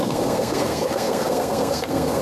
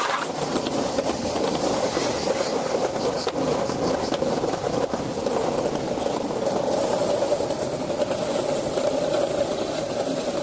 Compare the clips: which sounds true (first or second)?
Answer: second